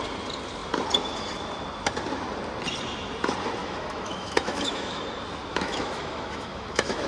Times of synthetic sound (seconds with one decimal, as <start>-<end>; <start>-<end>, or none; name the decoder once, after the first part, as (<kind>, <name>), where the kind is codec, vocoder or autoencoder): 3.6-5.0 (autoencoder, DAC-VAE); 5.5-7.1